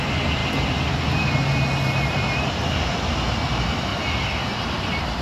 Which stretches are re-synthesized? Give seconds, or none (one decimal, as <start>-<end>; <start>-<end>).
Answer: none